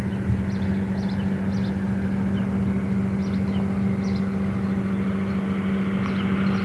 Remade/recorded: recorded